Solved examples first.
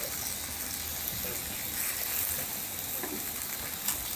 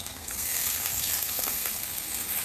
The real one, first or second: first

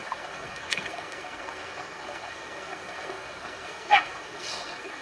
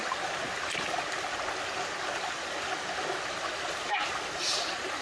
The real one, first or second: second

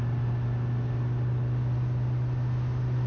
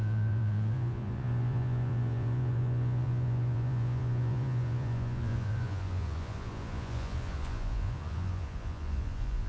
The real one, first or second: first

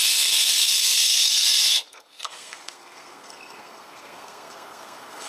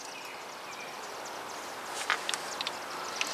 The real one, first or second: second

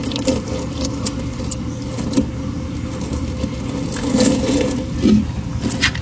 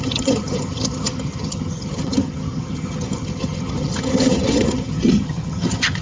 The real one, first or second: first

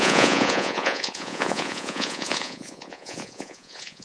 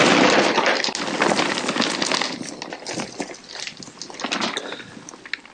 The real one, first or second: second